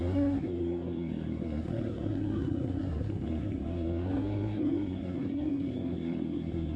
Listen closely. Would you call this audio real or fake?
fake